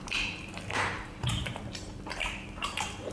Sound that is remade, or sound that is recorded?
remade